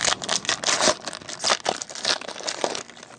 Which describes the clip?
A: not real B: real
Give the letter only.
B